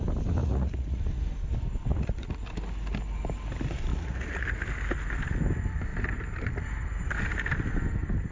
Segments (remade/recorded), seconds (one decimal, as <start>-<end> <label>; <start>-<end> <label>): 0.0-0.4 recorded; 0.4-1.0 remade; 1.0-1.9 recorded; 1.9-2.4 remade; 2.4-3.9 recorded; 3.9-4.4 remade; 4.4-8.3 recorded